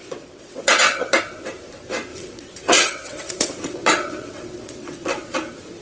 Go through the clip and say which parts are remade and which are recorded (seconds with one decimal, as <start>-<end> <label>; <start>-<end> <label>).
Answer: 0.0-1.2 remade; 1.2-2.1 recorded; 2.1-5.3 remade; 5.3-5.8 recorded